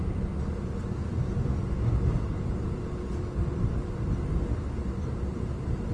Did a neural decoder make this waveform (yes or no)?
no